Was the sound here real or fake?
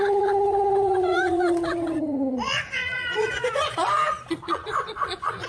fake